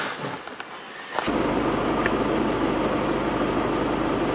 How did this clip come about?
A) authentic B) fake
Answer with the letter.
A